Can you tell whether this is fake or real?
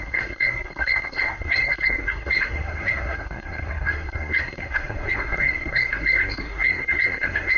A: fake